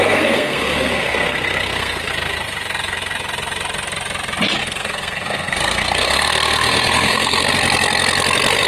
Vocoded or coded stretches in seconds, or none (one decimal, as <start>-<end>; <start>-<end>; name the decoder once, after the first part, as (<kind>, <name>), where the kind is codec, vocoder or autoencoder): 0.0-2.1 (codec, SNAC); 4.6-7.5